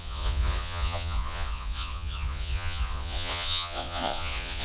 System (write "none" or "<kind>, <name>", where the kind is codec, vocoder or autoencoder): vocoder, Vocos